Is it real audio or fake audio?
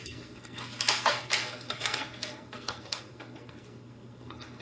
fake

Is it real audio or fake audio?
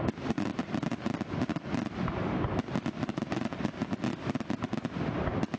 real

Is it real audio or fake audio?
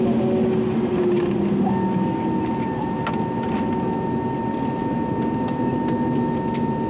real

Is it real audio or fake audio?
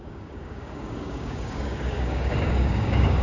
fake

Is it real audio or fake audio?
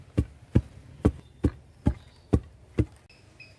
real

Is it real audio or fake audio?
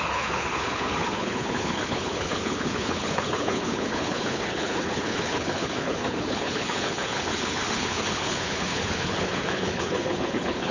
fake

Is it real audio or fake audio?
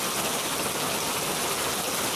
real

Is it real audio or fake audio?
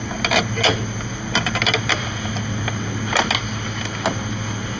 real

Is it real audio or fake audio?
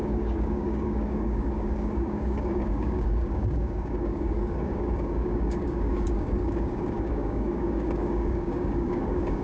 fake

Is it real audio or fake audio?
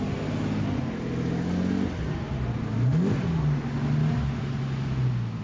real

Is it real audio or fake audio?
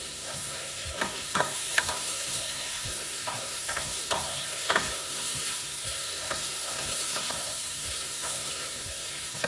fake